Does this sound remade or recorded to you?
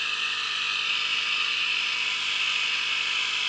recorded